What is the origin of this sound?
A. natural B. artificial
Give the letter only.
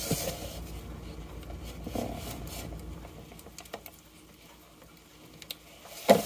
A